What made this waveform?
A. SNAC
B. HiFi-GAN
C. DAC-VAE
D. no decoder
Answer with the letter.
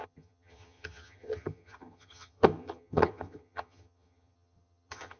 B